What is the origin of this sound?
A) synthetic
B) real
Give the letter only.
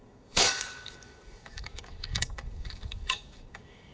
A